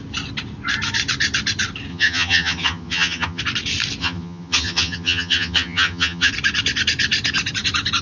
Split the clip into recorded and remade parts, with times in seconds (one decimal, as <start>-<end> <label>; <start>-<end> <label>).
0.0-1.9 recorded; 1.9-3.4 remade; 3.4-4.0 recorded; 4.0-6.3 remade; 6.3-8.0 recorded